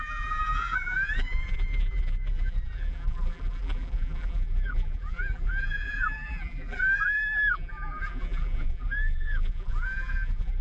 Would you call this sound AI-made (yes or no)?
yes